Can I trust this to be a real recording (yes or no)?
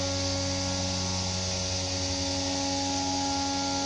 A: yes